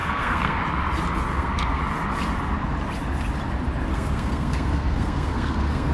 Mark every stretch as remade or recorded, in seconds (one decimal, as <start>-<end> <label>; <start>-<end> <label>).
0.0-0.6 remade; 0.6-1.3 recorded; 1.3-1.8 remade; 1.8-3.9 recorded; 3.9-5.9 remade